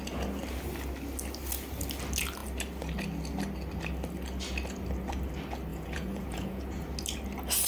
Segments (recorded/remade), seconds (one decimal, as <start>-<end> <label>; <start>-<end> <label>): 0.0-5.7 recorded; 5.7-6.6 remade; 6.6-7.7 recorded

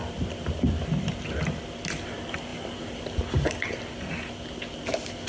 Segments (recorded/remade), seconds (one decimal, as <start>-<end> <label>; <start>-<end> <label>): 0.0-5.3 recorded